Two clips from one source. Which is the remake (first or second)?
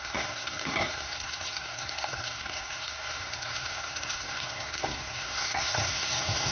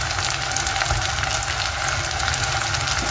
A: first